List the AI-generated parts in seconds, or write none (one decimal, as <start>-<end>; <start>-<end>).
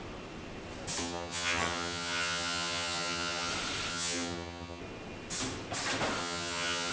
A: 1.0-3.5; 3.9-4.8; 6.2-6.9